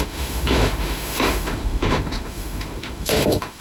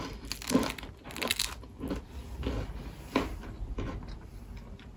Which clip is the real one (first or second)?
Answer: second